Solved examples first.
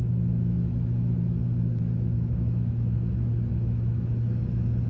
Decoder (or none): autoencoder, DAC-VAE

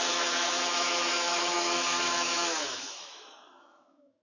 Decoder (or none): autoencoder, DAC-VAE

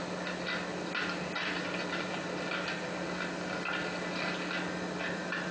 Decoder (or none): none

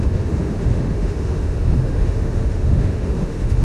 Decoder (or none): autoencoder, DAC-VAE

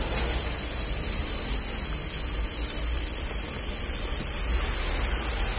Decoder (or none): none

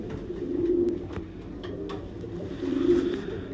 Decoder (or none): none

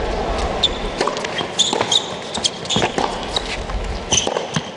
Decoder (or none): none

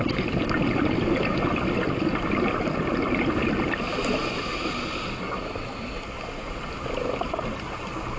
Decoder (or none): none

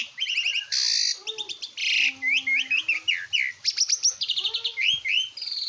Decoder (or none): none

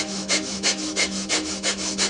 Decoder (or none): autoencoder, DAC-VAE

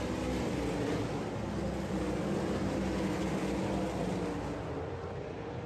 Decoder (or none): none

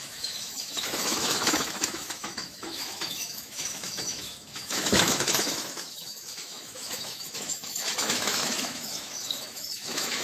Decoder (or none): autoencoder, DAC-VAE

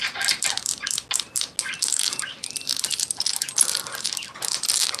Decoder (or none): none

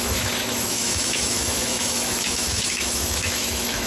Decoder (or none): autoencoder, DAC-VAE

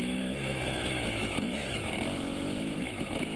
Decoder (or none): autoencoder, DAC-VAE